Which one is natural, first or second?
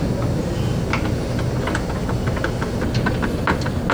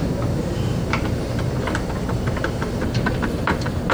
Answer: first